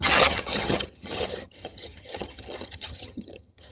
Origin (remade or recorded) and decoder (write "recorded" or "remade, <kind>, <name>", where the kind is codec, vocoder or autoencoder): remade, vocoder, HiFi-GAN